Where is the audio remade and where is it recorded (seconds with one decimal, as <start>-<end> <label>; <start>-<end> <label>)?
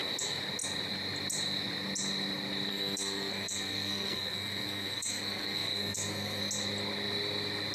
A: 0.0-2.7 recorded; 2.7-6.4 remade; 6.4-7.7 recorded